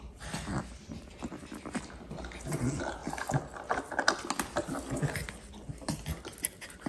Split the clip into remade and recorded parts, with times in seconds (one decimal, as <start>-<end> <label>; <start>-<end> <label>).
0.0-6.9 recorded